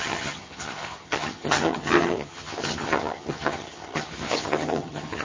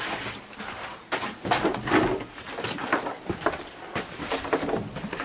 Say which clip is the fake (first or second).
first